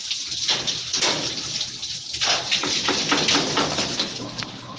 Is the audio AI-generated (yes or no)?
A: no